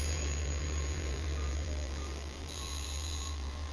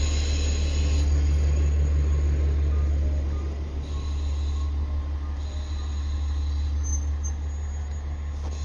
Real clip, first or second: second